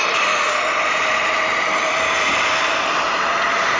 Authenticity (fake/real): fake